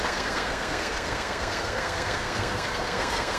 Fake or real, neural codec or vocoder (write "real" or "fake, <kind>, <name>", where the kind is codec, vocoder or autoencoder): fake, codec, SNAC